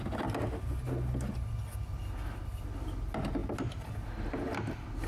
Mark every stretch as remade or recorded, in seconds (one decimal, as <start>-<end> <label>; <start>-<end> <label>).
0.0-5.1 recorded